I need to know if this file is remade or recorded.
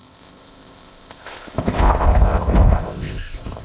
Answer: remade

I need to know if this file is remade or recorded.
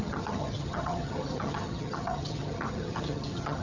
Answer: remade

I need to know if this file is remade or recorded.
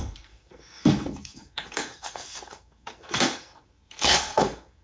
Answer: remade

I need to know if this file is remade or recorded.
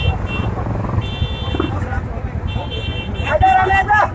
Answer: recorded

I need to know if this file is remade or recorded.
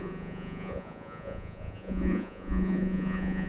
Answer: remade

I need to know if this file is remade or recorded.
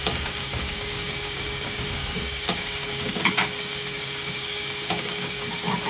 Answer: remade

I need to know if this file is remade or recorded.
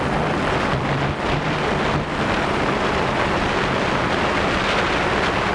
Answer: recorded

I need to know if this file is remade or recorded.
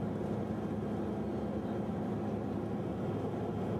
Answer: recorded